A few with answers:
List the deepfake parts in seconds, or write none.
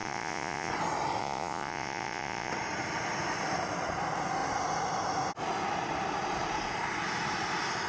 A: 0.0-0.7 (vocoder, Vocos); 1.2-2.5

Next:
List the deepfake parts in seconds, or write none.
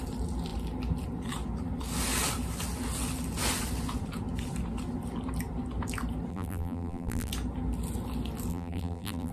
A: 6.3-7.3 (vocoder, BigVGAN v2); 8.5-9.3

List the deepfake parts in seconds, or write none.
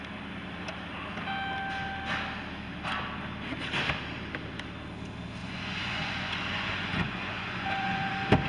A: 5.4-8.1 (vocoder, Vocos)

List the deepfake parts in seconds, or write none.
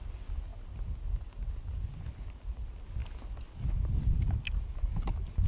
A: none